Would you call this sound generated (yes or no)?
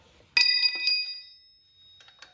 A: no